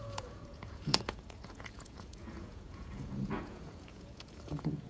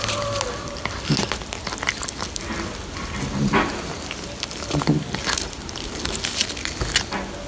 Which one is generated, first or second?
first